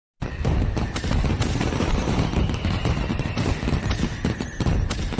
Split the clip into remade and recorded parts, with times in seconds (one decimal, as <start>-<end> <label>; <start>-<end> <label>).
0.0-0.4 recorded; 0.4-3.5 remade; 3.5-5.2 recorded